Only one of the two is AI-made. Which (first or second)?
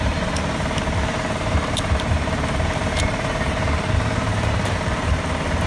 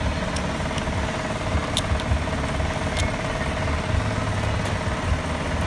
first